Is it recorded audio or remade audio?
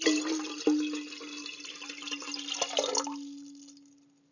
recorded